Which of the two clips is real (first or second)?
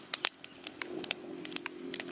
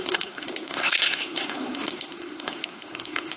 first